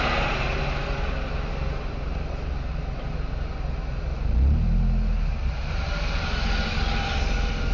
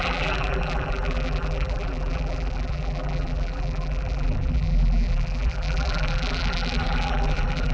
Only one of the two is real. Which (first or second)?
first